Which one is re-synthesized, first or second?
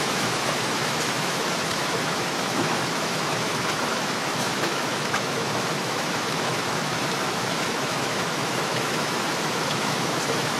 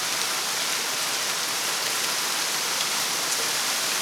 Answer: first